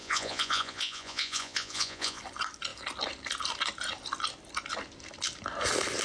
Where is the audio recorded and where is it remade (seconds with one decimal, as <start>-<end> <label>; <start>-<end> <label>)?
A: 0.0-2.2 remade; 2.2-6.0 recorded